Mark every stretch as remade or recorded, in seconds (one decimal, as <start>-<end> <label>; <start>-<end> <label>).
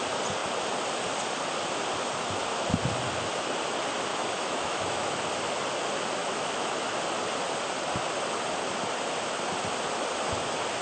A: 0.0-4.1 recorded; 4.1-5.2 remade; 5.2-6.2 recorded; 6.2-6.7 remade; 6.7-10.8 recorded